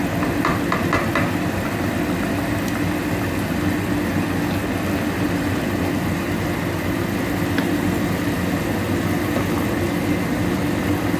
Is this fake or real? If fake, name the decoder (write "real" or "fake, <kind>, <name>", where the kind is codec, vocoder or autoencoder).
real